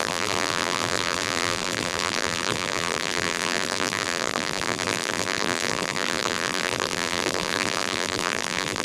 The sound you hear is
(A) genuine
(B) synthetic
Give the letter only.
B